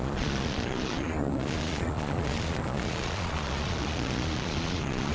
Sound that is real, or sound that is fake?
fake